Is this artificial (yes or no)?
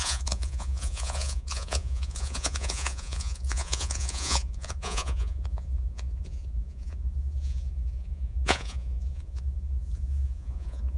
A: yes